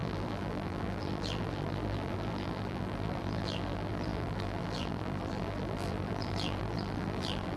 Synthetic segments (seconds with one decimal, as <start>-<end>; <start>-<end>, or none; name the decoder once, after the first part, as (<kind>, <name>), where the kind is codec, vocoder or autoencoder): 0.0-7.6 (vocoder, BigVGAN v2)